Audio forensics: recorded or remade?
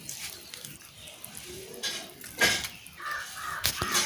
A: remade